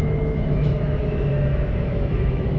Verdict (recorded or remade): remade